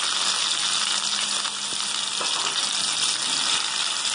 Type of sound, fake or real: real